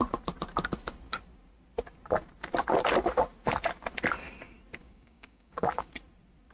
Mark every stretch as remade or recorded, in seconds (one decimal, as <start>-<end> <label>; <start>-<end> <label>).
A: 0.0-4.8 recorded; 4.8-5.9 remade; 5.9-6.5 recorded